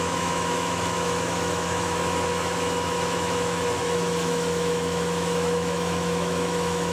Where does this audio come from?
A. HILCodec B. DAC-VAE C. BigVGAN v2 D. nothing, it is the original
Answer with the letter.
B